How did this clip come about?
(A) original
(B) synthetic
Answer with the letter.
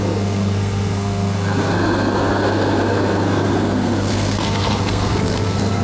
B